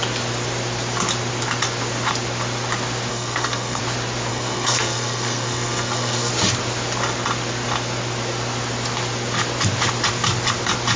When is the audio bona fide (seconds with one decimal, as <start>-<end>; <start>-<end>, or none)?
0.0-3.1; 3.8-4.3; 6.3-11.0